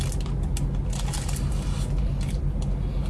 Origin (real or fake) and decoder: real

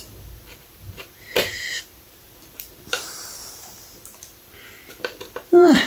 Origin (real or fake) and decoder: fake, vocoder, BigVGAN v2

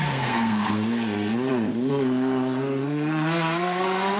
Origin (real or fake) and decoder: fake, codec, SNAC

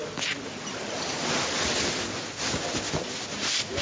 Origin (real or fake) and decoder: real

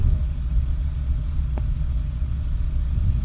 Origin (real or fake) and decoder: fake, vocoder, Vocos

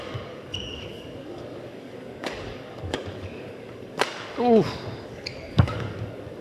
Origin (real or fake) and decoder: fake, codec, DAC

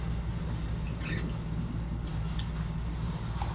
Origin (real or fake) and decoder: real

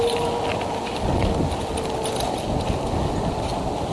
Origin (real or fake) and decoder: real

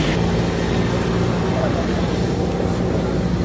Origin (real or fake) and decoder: real